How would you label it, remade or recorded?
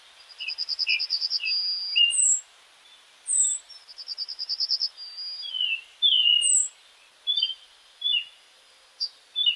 recorded